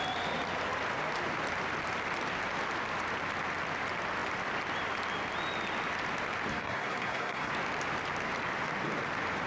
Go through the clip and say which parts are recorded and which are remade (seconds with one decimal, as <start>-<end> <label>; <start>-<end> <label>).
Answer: 0.0-6.5 recorded; 6.5-7.5 remade; 7.5-9.5 recorded